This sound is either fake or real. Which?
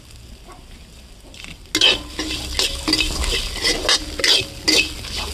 real